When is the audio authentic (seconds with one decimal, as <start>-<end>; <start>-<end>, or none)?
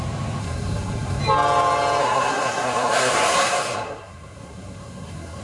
0.0-0.4; 1.2-2.0